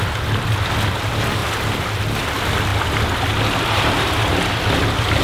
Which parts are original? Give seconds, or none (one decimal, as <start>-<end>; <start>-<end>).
0.0-5.2